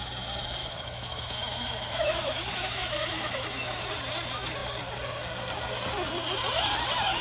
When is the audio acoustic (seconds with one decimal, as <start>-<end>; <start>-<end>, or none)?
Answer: 0.0-0.6; 3.8-7.2